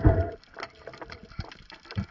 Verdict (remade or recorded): recorded